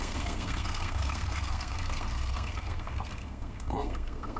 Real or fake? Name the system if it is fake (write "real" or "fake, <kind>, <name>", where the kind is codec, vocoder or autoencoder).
fake, codec, SNAC